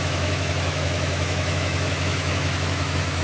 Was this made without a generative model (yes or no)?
no